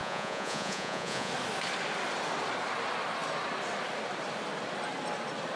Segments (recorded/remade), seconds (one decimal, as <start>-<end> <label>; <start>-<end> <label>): 0.0-1.3 remade; 1.3-5.6 recorded